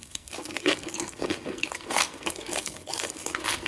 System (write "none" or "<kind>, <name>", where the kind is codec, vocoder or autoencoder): codec, SNAC